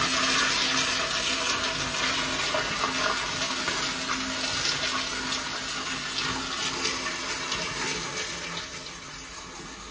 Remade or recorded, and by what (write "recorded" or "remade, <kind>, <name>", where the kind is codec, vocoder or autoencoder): recorded